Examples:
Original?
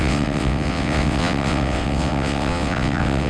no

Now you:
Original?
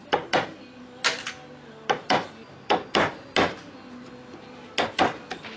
yes